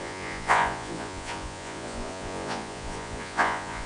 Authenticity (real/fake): fake